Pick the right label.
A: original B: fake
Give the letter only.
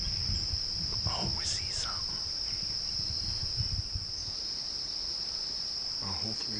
A